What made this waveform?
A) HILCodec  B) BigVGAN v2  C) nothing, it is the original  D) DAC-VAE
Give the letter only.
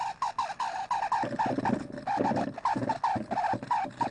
C